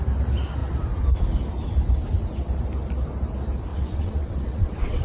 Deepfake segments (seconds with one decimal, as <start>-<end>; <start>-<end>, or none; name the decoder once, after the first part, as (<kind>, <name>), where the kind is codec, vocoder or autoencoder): 3.7-5.0 (vocoder, WaveNeXt)